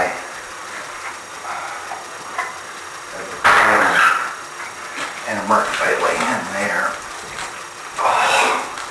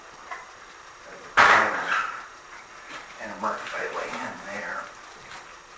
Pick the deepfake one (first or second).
second